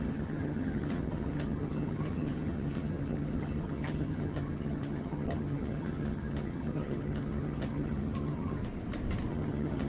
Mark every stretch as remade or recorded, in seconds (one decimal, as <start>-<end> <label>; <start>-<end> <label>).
0.0-8.6 remade; 8.6-9.3 recorded; 9.3-9.9 remade